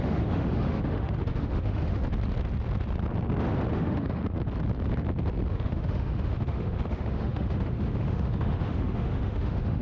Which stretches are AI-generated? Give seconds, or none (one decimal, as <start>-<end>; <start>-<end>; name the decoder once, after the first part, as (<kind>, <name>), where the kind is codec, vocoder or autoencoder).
0.0-2.0 (autoencoder, DAC-VAE); 3.7-4.2; 5.5-9.8

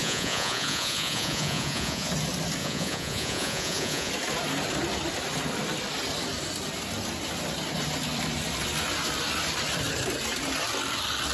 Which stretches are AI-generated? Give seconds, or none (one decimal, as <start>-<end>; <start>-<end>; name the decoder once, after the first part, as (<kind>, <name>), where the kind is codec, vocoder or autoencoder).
0.0-2.1 (vocoder, Vocos); 2.6-4.1

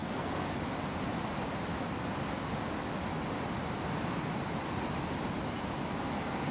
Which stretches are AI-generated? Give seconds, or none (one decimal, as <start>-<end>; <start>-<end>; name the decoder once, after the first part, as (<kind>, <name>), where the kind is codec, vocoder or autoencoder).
0.0-0.6 (codec, SNAC)